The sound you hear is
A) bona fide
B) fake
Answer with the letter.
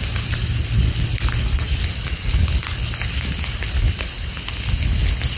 A